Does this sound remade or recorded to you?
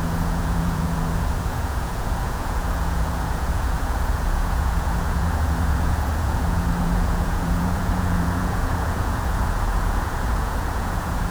remade